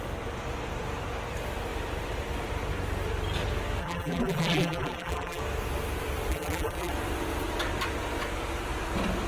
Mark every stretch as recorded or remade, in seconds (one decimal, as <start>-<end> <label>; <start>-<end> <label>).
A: 0.0-3.8 recorded; 3.8-5.4 remade; 5.4-6.3 recorded; 6.3-6.9 remade; 6.9-9.3 recorded